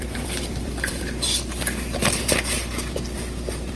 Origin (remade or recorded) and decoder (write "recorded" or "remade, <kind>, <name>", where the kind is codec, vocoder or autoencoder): remade, vocoder, BigVGAN v2